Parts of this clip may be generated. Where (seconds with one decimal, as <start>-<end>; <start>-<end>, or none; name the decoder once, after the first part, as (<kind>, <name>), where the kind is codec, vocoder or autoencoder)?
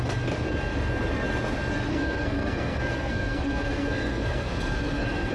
1.9-5.3 (codec, SNAC)